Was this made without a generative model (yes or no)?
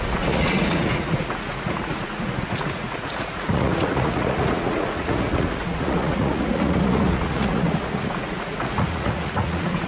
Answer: no